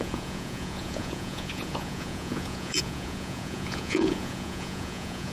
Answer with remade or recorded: remade